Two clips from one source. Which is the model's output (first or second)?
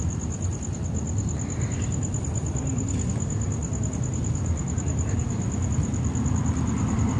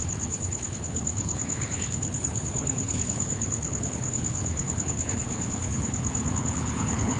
second